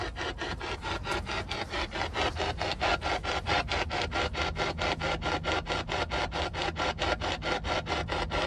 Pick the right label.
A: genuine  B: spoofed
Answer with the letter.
A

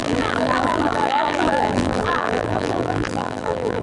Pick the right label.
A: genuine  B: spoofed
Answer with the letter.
B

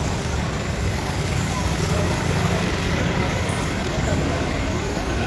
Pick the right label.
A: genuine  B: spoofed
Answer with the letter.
B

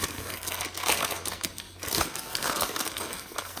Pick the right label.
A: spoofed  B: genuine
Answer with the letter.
A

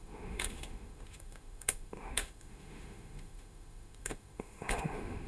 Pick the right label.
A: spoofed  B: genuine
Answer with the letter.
A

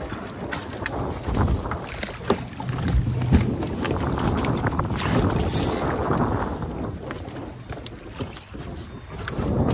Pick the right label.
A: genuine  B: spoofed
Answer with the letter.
A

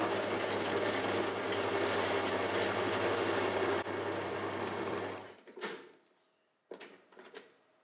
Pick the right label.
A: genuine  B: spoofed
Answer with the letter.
A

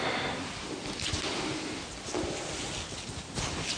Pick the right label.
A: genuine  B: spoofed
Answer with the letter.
A